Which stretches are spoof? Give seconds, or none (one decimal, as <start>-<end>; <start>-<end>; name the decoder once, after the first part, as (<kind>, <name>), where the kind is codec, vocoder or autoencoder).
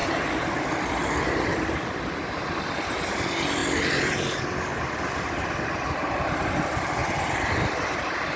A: none